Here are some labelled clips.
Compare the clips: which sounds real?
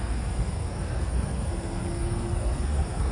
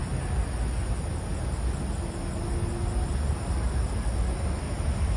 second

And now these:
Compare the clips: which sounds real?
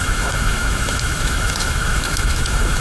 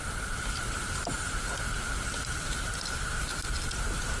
second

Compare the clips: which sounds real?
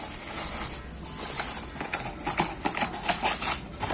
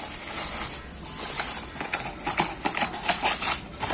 first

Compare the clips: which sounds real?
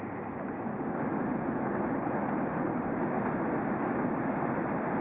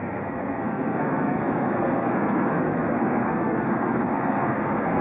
first